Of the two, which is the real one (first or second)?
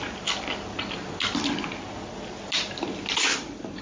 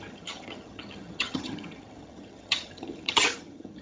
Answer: first